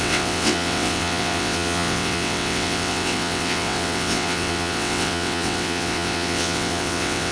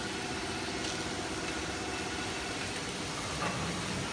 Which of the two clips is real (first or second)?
second